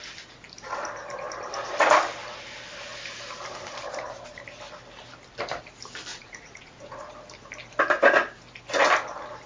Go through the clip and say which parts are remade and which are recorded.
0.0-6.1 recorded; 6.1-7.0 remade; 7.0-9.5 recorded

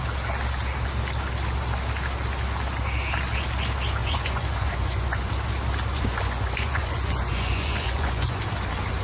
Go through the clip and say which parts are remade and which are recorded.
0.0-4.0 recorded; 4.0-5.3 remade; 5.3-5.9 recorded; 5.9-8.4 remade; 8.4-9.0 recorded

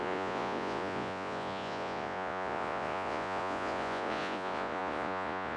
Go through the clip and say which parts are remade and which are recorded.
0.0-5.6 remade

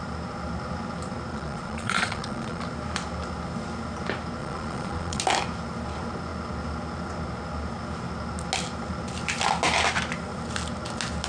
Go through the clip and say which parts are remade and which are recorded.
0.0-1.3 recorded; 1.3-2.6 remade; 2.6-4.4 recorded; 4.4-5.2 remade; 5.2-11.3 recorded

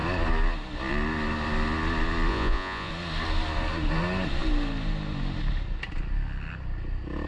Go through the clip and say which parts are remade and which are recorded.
0.0-2.3 recorded; 2.3-2.9 remade; 2.9-7.3 recorded

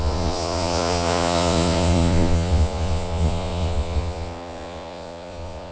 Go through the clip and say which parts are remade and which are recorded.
0.0-5.7 remade

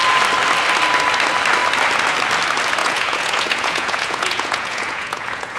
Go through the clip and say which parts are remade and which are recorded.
0.0-2.8 recorded; 2.8-5.6 remade